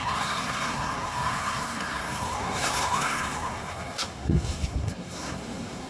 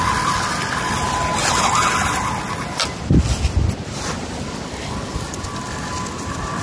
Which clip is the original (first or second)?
second